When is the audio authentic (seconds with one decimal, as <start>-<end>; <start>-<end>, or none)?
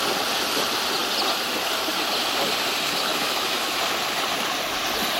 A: 0.0-3.1; 3.8-5.2